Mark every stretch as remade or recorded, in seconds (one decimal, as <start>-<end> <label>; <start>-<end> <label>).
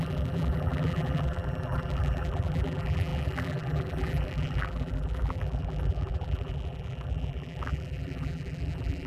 0.0-9.1 remade